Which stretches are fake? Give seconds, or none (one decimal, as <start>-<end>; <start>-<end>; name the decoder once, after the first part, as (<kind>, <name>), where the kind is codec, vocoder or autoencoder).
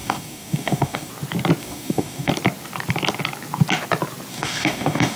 0.0-1.1 (codec, DAC); 1.6-2.3; 4.3-5.2